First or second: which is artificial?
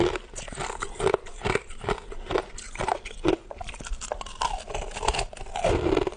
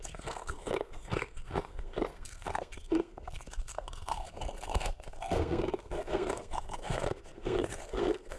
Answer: second